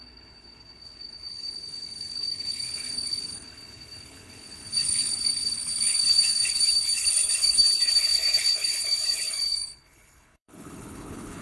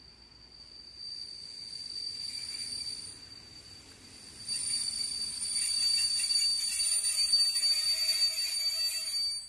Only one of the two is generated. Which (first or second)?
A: first